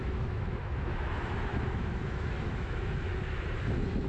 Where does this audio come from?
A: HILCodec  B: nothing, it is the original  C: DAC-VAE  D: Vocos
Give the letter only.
C